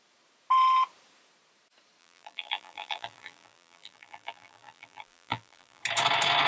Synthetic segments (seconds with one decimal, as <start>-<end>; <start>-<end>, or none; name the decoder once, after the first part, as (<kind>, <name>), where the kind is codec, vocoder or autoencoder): 2.0-5.8 (vocoder, BigVGAN v2)